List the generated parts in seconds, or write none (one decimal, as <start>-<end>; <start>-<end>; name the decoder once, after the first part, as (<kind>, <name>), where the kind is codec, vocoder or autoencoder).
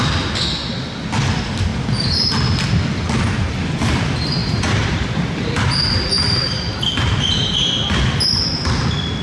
4.4-8.4 (vocoder, BigVGAN v2)